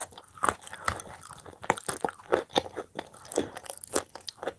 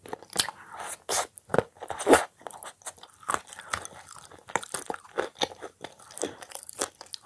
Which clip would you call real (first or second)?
second